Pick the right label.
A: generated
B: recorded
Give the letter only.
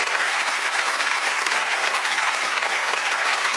A